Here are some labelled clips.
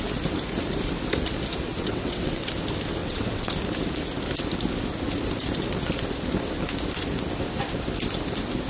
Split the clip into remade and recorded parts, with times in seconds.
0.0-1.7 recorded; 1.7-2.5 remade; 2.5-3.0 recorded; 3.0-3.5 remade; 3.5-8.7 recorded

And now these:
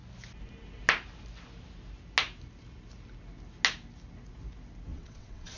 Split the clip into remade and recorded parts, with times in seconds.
0.0-4.9 recorded; 4.9-5.6 remade